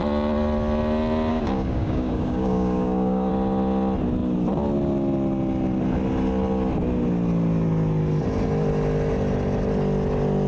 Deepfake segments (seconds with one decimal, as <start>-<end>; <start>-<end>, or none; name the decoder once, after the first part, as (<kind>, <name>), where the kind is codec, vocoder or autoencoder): 1.3-3.3 (codec, DAC)